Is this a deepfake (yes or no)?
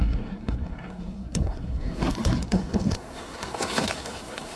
yes